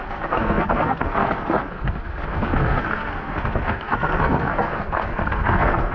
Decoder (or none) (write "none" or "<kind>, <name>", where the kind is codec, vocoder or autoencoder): codec, SNAC